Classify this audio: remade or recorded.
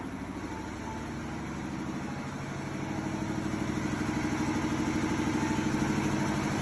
recorded